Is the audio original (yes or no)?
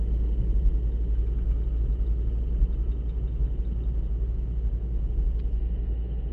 yes